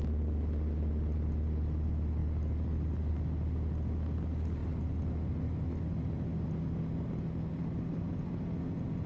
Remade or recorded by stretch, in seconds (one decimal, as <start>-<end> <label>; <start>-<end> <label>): 0.0-9.1 recorded